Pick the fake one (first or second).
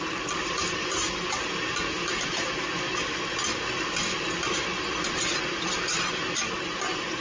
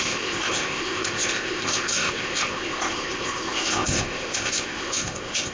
second